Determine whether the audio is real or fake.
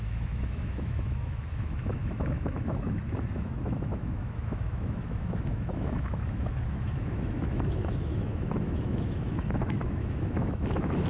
fake